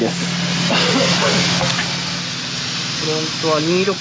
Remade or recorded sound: recorded